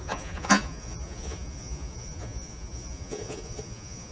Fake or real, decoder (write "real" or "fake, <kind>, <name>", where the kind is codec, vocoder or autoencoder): fake, vocoder, Vocos